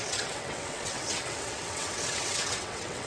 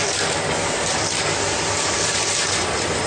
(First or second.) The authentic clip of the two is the second